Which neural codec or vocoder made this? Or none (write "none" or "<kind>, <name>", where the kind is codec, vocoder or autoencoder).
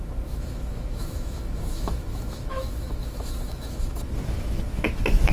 autoencoder, DAC-VAE